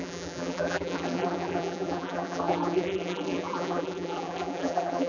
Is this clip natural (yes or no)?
no